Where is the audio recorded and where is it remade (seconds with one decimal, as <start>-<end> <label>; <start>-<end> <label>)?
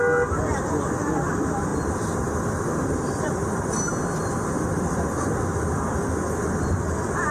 0.0-1.7 recorded; 1.7-5.4 remade; 5.4-7.3 recorded